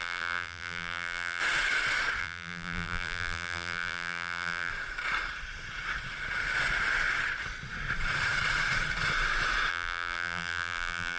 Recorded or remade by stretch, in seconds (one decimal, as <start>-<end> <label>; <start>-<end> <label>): 0.0-1.4 remade; 1.4-2.2 recorded; 2.2-4.7 remade; 4.7-9.7 recorded; 9.7-11.2 remade